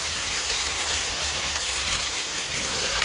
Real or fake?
fake